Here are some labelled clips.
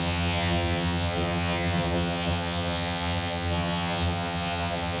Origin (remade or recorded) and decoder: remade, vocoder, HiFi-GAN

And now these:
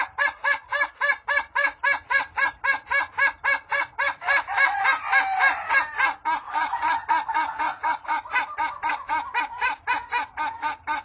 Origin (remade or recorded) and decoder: recorded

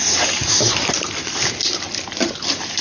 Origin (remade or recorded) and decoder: recorded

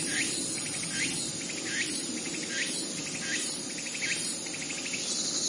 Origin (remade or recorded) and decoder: recorded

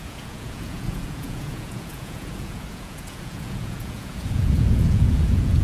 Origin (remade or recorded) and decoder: remade, vocoder, Vocos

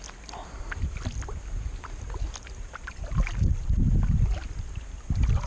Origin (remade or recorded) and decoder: recorded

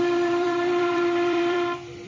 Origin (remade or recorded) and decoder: remade, vocoder, BigVGAN v2